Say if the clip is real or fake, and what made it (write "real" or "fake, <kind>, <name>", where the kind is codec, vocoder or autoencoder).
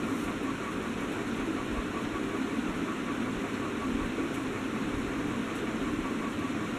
real